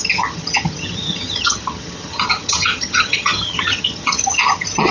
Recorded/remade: remade